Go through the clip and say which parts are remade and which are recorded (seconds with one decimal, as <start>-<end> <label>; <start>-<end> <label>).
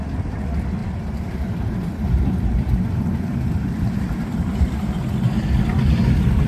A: 0.0-0.8 recorded; 0.8-4.7 remade; 4.7-6.5 recorded